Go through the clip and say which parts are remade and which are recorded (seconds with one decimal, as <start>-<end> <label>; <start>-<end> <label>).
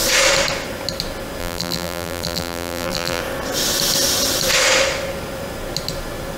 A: 0.0-1.4 recorded; 1.4-3.2 remade; 3.2-6.4 recorded